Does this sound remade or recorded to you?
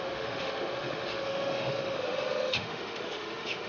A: remade